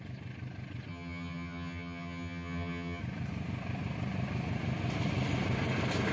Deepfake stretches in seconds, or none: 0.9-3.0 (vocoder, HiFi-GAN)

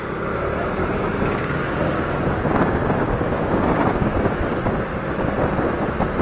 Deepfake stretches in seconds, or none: 0.8-4.5 (codec, DAC)

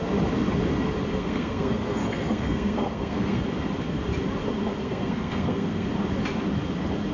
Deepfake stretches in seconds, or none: 1.1-3.4 (codec, SNAC); 4.8-5.9

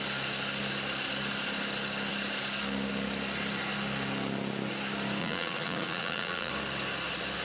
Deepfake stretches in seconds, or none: 5.2-6.5 (vocoder, Vocos)

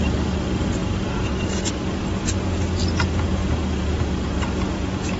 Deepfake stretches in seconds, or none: 3.4-4.0 (vocoder, BigVGAN v2)

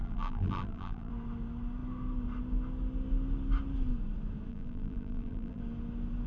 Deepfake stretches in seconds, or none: 0.0-1.1 (vocoder, BigVGAN v2); 4.5-5.6